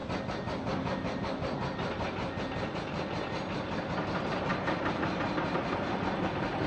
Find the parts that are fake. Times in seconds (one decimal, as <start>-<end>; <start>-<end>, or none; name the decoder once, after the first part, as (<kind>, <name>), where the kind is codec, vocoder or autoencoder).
4.5-5.5 (vocoder, BigVGAN v2)